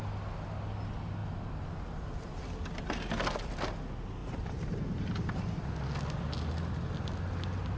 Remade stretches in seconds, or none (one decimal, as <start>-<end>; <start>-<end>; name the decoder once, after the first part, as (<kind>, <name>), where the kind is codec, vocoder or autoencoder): 1.2-2.4 (vocoder, BigVGAN v2); 4.2-5.6